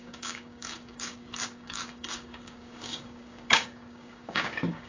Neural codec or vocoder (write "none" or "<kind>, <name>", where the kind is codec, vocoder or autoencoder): codec, DAC